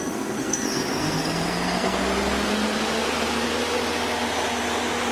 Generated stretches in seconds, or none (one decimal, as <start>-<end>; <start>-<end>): 0.0-2.0